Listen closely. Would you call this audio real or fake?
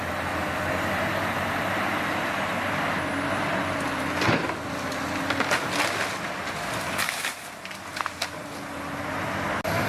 real